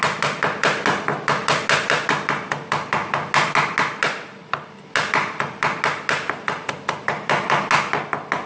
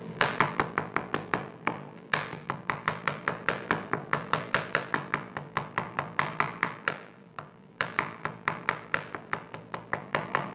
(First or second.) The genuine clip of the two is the first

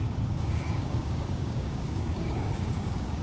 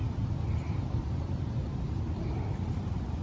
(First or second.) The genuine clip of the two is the second